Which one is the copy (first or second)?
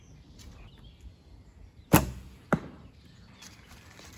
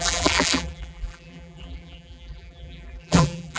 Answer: second